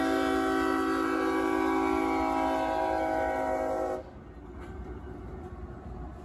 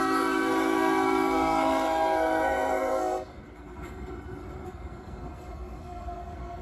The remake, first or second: second